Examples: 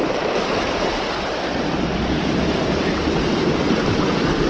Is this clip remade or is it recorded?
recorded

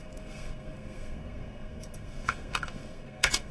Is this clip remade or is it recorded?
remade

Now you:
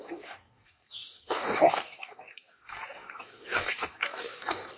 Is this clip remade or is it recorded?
remade